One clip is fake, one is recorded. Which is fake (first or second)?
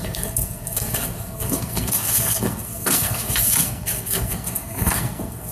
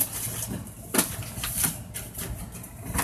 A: first